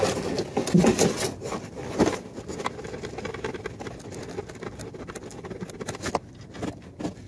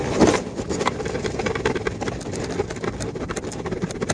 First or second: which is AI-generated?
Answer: second